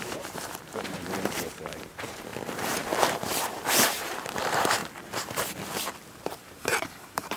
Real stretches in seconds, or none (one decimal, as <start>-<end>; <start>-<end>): 2.3-3.0; 4.8-6.0

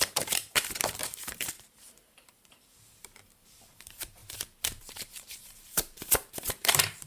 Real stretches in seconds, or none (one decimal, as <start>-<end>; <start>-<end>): 4.2-4.8

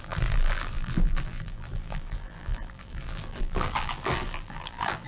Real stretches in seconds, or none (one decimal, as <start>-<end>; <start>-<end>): none